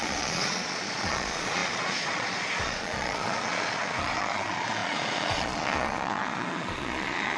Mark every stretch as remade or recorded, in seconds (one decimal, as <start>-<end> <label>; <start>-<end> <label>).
0.0-7.4 remade